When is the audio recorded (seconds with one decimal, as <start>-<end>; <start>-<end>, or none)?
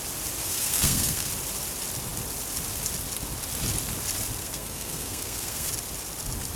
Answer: 0.0-0.4; 1.3-4.4; 5.7-6.6